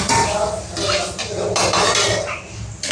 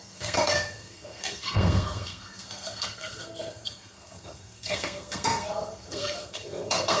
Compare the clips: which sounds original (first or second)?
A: first